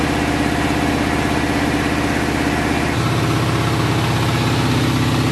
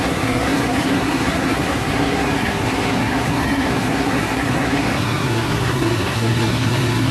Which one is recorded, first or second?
first